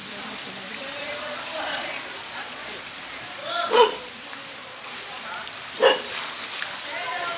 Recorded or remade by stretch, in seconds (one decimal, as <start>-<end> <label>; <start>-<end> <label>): 0.0-1.7 recorded; 1.7-2.9 remade; 2.9-3.4 recorded; 3.4-4.0 remade; 4.0-4.7 recorded; 4.7-5.2 remade; 5.2-7.4 recorded